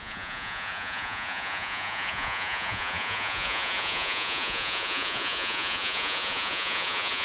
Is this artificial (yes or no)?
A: yes